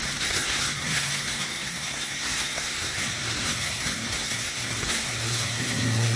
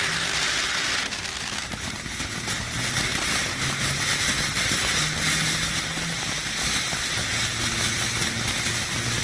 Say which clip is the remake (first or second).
first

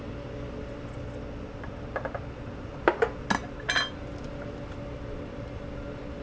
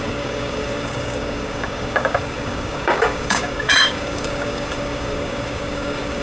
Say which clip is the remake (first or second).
second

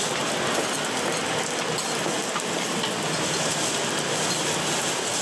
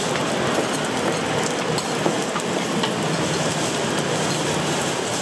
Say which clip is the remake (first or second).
second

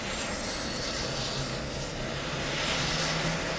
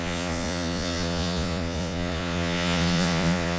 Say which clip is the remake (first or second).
second